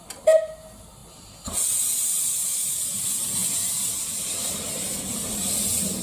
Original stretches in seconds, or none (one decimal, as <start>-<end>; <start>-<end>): 0.0-6.0